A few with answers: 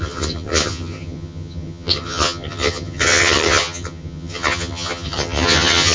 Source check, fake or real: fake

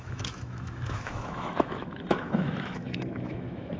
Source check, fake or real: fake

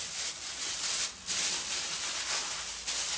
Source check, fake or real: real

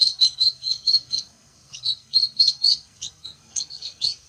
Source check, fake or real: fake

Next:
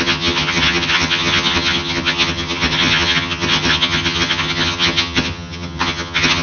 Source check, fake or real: fake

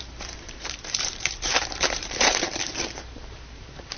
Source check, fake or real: fake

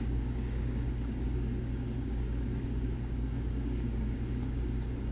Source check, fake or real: fake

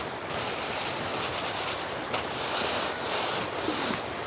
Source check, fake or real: fake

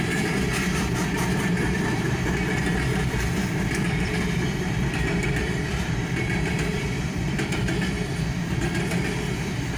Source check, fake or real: fake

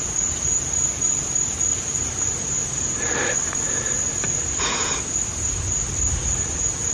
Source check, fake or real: real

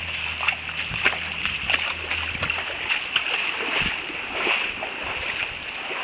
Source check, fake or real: real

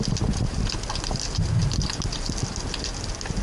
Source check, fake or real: real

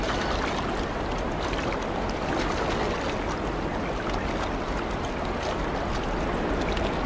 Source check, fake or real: real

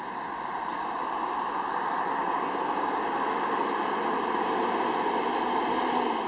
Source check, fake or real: real